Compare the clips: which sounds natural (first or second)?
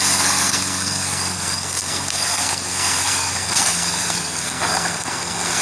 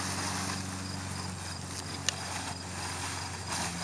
second